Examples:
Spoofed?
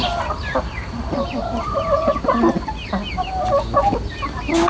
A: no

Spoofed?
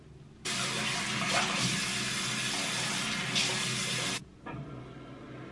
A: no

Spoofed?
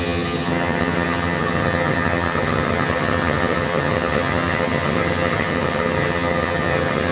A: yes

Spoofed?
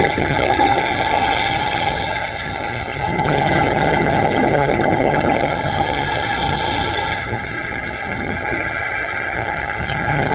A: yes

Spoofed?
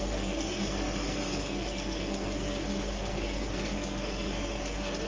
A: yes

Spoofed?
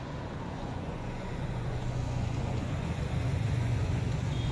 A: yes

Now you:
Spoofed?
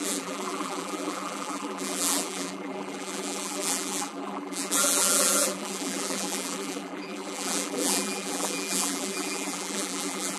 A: yes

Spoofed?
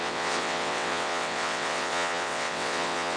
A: yes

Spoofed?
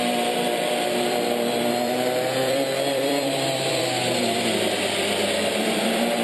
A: yes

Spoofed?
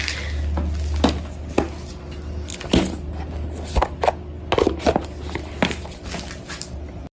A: no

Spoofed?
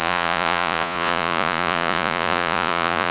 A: yes